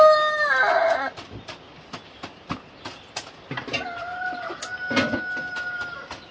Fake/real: real